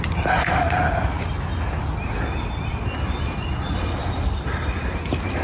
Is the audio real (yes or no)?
yes